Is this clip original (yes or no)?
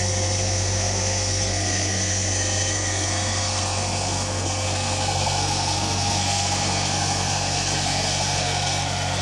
no